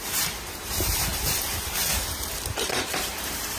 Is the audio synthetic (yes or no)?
yes